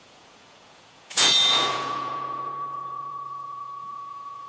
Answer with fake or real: fake